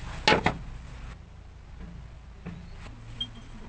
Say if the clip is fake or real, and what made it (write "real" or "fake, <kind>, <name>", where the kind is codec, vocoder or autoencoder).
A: real